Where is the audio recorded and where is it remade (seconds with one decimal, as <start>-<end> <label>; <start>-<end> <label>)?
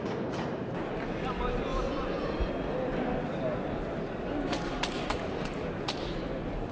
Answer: 0.0-1.7 recorded; 1.7-5.7 remade; 5.7-6.7 recorded